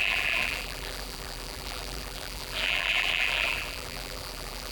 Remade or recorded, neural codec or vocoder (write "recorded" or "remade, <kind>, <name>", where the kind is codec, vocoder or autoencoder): remade, vocoder, BigVGAN v2